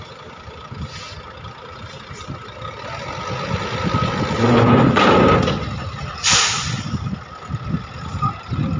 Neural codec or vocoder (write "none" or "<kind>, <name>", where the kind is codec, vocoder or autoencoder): none